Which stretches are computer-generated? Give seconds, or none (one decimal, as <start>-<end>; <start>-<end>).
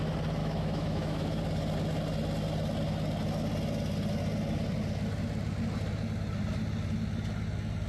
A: 0.4-1.4